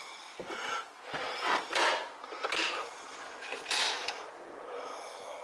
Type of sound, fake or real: real